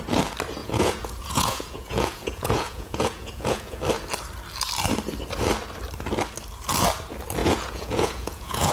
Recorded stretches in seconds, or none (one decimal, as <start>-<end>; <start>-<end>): 0.0-0.6; 3.8-7.4